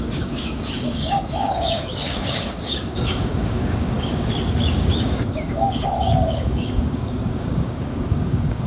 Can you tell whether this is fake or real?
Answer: fake